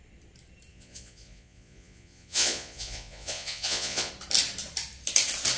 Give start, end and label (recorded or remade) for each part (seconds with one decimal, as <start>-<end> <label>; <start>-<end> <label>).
0.0-0.7 recorded; 0.7-4.1 remade; 4.1-5.6 recorded